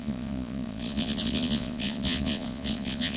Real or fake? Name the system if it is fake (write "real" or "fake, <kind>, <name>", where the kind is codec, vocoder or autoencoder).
fake, vocoder, Vocos